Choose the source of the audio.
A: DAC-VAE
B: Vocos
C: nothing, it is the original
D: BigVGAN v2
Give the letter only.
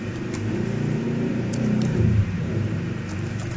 D